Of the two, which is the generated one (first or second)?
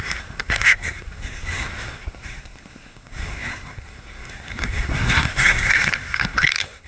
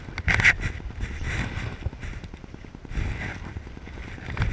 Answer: first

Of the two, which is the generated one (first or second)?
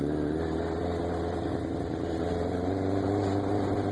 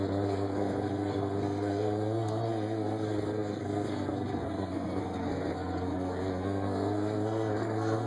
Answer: second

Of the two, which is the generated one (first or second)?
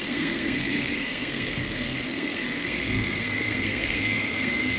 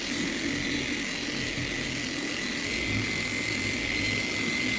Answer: first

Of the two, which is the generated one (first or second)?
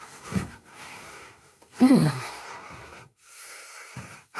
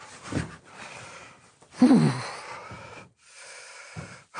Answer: first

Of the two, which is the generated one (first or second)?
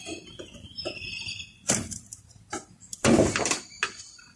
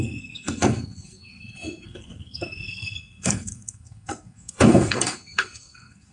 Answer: second